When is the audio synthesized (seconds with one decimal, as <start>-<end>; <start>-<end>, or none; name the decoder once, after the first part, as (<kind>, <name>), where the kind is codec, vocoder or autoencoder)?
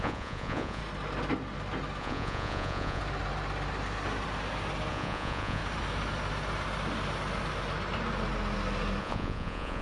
0.0-0.8 (vocoder, Vocos); 2.0-3.0; 4.9-5.6; 9.0-9.8